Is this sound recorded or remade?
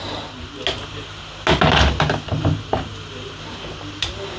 recorded